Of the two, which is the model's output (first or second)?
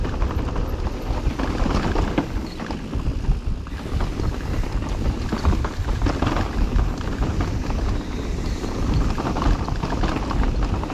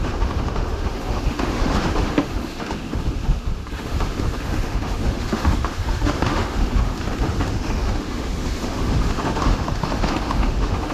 second